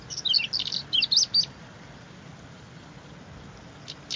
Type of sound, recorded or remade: recorded